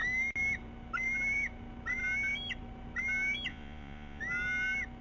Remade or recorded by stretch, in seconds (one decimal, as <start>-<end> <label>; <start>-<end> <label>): 0.0-3.5 recorded; 3.5-4.2 remade; 4.2-5.0 recorded